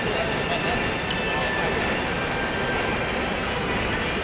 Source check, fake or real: real